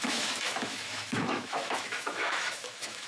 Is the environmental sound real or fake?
fake